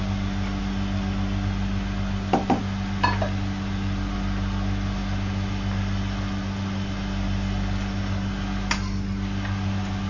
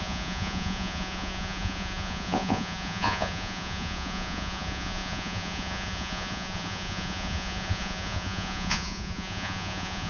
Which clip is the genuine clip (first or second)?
first